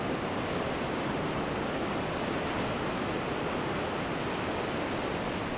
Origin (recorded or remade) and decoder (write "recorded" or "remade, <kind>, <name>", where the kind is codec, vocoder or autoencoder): recorded